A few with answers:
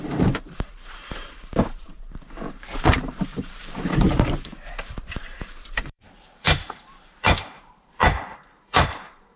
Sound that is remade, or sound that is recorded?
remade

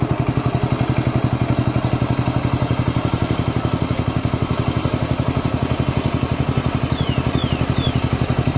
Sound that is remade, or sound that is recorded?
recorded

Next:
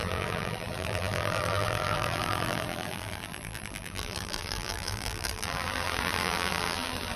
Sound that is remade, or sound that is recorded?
remade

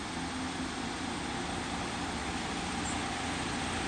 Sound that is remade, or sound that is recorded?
recorded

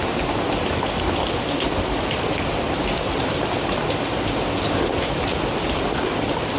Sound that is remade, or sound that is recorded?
recorded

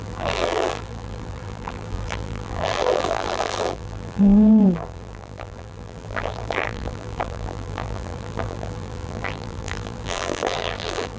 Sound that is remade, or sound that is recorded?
remade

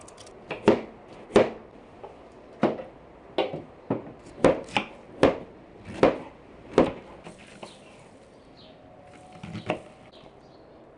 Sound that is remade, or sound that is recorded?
recorded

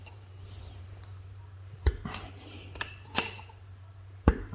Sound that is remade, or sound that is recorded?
remade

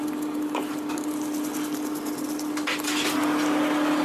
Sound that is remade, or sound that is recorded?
recorded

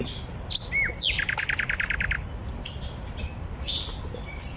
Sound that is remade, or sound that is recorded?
recorded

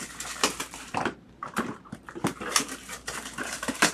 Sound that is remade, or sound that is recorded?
remade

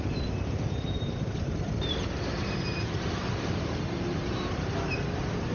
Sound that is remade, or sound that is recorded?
remade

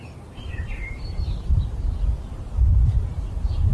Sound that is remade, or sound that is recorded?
remade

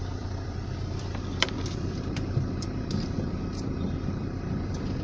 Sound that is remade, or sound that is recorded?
remade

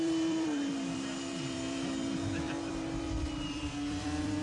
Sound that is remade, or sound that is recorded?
remade